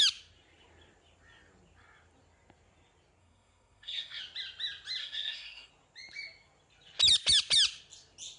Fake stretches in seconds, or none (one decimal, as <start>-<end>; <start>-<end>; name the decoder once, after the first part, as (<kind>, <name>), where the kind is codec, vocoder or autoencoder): 3.2-4.2 (codec, SNAC); 5.0-5.7